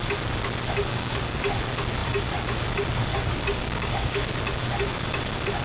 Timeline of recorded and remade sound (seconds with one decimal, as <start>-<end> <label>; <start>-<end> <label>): 0.0-0.9 recorded; 0.9-1.4 remade; 1.4-3.1 recorded; 3.1-4.4 remade; 4.4-5.6 recorded